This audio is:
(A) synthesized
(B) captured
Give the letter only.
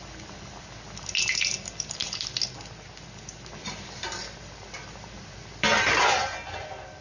B